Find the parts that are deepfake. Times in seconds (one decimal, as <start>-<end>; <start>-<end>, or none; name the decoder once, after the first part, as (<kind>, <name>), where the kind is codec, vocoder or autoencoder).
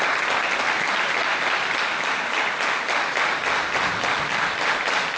none